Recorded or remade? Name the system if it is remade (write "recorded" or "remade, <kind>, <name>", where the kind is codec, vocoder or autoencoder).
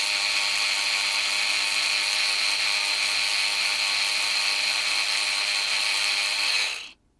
recorded